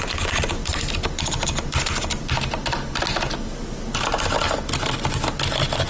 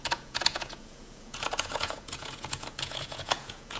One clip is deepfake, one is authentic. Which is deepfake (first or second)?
second